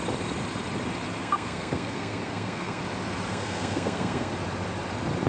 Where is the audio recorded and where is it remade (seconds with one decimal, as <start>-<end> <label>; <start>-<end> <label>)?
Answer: 0.0-1.2 recorded; 1.2-2.8 remade; 2.8-3.3 recorded; 3.3-4.3 remade; 4.3-5.3 recorded